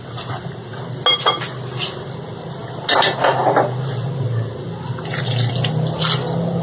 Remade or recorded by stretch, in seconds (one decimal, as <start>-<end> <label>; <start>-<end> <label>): 0.0-6.6 recorded

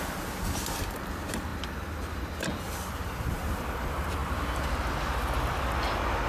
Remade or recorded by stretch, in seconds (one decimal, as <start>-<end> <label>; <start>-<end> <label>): 0.0-4.2 recorded; 4.2-5.7 remade; 5.7-6.3 recorded